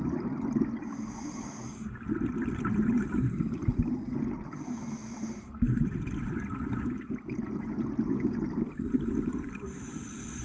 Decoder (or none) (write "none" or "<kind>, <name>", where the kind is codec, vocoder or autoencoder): none